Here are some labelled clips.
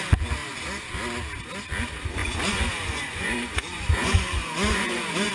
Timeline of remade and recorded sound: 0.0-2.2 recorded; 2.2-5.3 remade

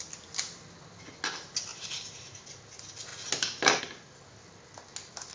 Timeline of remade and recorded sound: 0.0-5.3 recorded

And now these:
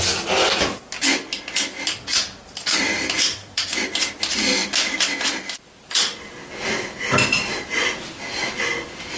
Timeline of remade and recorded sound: 0.0-2.1 recorded; 2.1-4.1 remade; 4.1-9.2 recorded

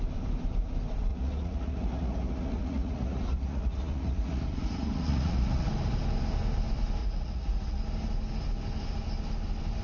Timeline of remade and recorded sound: 0.0-1.1 recorded; 1.1-5.7 remade; 5.7-7.0 recorded; 7.0-7.8 remade; 7.8-9.8 recorded